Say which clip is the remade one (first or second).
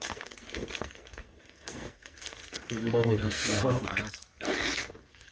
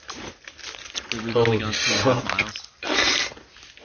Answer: first